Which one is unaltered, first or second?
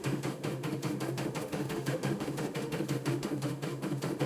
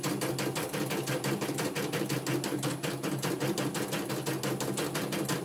second